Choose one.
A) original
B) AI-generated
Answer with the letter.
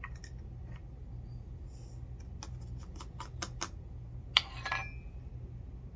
A